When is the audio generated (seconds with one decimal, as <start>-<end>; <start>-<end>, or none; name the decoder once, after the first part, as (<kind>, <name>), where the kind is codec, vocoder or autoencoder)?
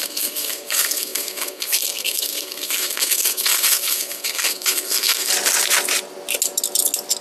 0.0-5.3 (codec, SNAC)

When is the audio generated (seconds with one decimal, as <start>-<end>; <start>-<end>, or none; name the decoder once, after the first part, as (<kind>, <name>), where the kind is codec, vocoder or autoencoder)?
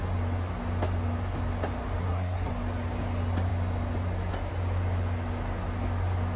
2.0-2.5 (codec, SNAC)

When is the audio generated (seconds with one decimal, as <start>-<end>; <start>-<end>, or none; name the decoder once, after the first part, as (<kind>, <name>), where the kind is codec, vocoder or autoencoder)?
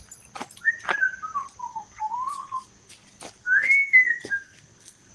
1.7-2.9 (codec, SNAC); 3.4-5.1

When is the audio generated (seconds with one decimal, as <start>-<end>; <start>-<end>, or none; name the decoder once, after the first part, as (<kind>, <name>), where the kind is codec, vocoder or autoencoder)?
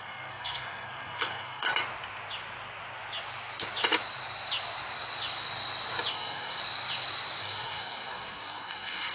0.0-1.7 (codec, SNAC); 6.1-6.6; 7.4-9.1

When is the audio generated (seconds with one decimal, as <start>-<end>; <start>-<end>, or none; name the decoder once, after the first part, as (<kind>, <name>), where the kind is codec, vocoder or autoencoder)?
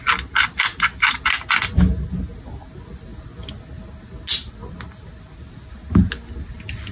none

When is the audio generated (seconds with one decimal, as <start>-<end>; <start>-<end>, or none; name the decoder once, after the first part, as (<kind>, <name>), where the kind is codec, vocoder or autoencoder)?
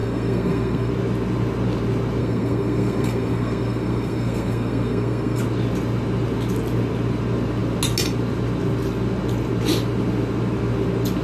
0.0-0.9 (codec, SNAC); 2.2-5.4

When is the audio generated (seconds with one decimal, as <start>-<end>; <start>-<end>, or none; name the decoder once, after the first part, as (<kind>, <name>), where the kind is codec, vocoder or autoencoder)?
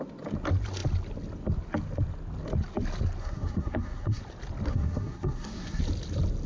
3.2-4.2 (codec, SNAC); 4.7-5.8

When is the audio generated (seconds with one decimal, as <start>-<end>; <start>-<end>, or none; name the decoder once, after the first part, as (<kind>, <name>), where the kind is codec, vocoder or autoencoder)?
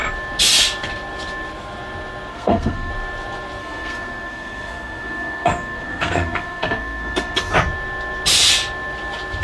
2.3-2.9 (codec, SNAC); 3.6-7.5